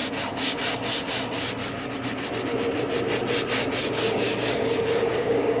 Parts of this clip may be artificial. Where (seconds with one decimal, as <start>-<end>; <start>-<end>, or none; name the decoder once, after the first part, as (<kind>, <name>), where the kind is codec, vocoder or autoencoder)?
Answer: 3.8-5.6 (codec, DAC)